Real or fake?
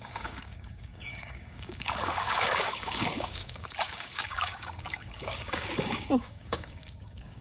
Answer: fake